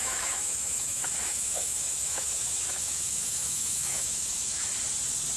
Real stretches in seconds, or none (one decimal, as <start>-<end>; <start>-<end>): 4.7-5.4